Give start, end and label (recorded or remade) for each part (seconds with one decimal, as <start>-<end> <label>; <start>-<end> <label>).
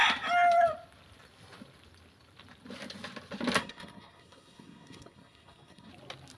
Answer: 0.0-3.6 recorded; 3.6-5.9 remade; 5.9-6.4 recorded